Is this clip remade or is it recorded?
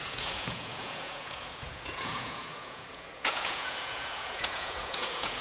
remade